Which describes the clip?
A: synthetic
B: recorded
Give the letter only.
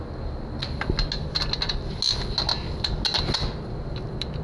B